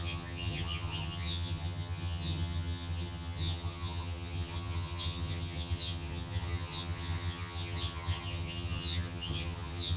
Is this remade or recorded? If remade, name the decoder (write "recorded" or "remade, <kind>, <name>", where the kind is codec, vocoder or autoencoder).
remade, vocoder, HiFi-GAN